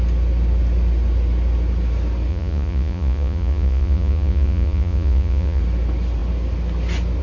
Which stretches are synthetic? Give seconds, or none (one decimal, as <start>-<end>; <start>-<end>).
2.3-5.6